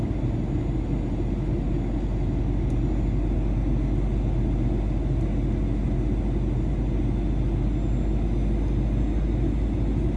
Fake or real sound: real